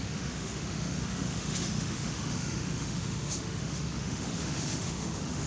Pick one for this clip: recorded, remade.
remade